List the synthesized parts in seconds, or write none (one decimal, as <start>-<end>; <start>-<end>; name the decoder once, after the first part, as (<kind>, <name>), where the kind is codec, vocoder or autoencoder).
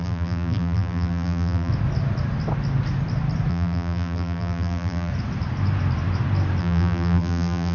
0.0-1.7 (vocoder, BigVGAN v2); 3.5-5.1; 6.6-7.7